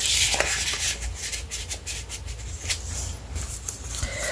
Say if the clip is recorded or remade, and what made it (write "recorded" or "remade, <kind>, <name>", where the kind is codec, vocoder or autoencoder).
recorded